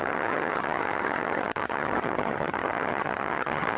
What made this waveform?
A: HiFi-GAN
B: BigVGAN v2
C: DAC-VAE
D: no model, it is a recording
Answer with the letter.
A